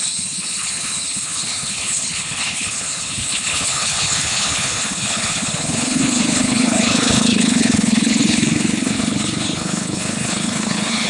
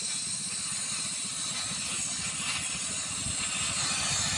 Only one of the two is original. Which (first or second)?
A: second